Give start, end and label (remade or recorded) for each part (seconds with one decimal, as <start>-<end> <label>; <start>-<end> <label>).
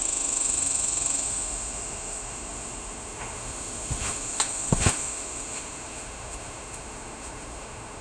0.0-8.0 remade